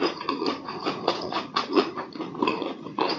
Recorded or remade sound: remade